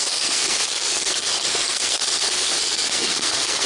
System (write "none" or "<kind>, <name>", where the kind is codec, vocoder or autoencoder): codec, SNAC